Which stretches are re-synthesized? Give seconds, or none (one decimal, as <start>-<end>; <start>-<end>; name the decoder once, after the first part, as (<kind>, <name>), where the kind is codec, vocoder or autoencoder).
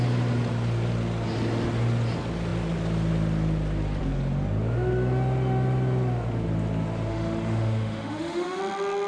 7.1-8.6 (autoencoder, DAC-VAE)